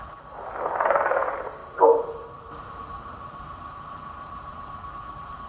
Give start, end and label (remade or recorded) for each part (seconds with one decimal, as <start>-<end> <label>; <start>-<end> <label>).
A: 0.0-1.6 recorded; 1.6-4.5 remade; 4.5-5.5 recorded